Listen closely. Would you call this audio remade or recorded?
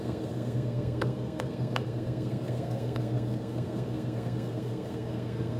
remade